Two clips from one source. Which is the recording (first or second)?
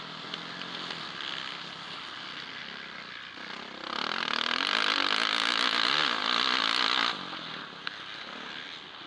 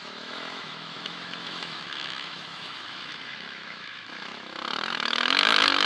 first